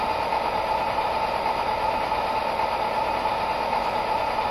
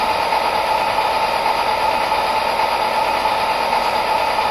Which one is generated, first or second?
first